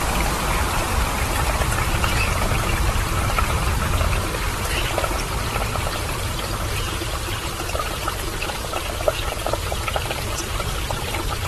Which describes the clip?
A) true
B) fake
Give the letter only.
B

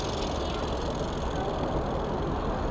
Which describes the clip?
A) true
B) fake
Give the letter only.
A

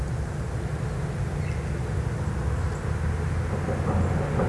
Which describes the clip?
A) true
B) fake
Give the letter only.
A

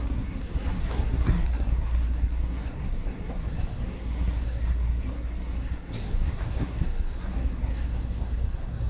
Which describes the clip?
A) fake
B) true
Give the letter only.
A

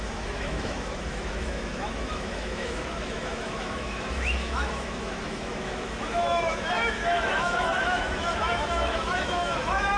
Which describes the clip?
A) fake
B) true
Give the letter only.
A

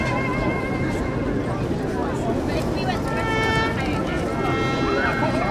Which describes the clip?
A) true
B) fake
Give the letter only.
A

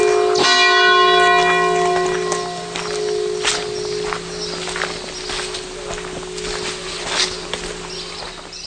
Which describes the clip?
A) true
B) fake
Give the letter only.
A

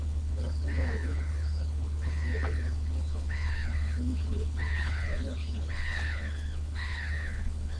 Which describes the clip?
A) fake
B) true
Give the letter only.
A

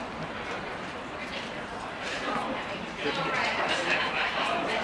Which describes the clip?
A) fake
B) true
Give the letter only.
A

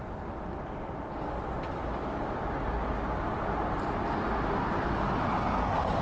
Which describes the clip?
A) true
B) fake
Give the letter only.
A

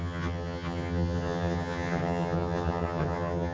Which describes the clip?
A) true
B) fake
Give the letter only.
B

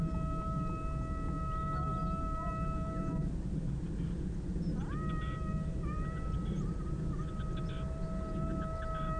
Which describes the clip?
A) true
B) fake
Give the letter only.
A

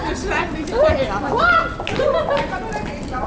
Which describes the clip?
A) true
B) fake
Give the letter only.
A